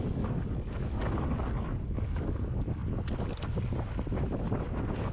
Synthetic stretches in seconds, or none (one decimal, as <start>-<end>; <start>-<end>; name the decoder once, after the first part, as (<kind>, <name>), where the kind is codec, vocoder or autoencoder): 0.0-2.8 (codec, DAC)